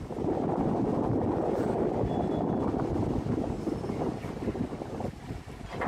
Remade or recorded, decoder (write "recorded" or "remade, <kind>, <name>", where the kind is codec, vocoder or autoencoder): recorded